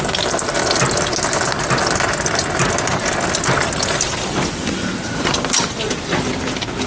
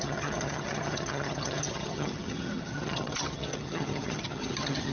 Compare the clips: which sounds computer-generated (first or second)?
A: second